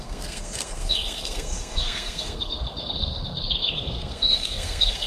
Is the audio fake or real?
fake